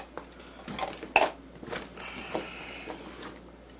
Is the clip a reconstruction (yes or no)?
no